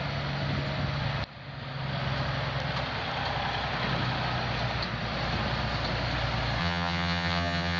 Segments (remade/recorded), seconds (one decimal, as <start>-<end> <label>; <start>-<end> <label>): 0.0-6.6 recorded; 6.6-7.8 remade